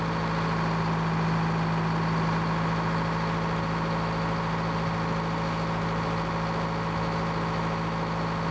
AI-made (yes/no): no